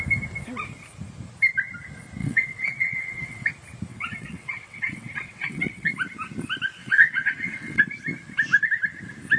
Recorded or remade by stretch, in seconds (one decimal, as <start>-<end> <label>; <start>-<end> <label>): 0.0-2.2 recorded; 2.2-3.5 remade; 3.5-3.9 recorded; 3.9-5.9 remade; 5.9-6.8 recorded; 6.8-7.8 remade; 7.8-9.4 recorded

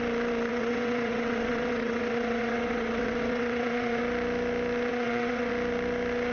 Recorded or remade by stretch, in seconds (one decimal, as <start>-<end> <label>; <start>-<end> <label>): 0.0-0.5 recorded; 0.5-4.0 remade; 4.0-4.9 recorded; 4.9-5.5 remade; 5.5-6.3 recorded

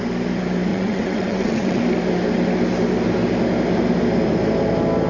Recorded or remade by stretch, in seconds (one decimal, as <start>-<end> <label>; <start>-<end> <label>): 0.0-0.7 recorded; 0.7-1.8 remade; 1.8-5.1 recorded

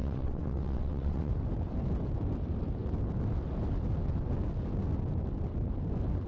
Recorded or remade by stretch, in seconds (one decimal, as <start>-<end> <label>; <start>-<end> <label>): 0.0-1.3 remade; 1.3-6.3 recorded